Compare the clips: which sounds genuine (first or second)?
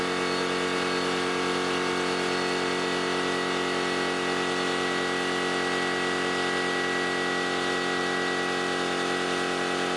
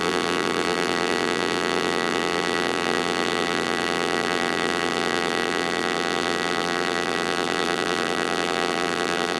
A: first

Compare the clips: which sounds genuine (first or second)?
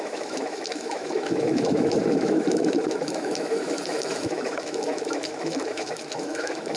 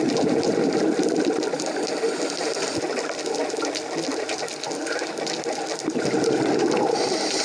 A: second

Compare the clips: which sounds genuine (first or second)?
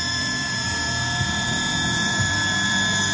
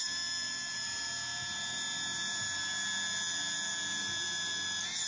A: second